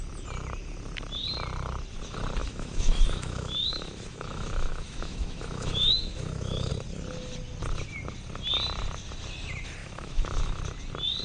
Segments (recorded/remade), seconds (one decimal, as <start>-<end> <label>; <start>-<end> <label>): 0.0-2.4 recorded; 2.4-6.7 remade; 6.7-9.8 recorded; 9.8-10.6 remade; 10.6-11.2 recorded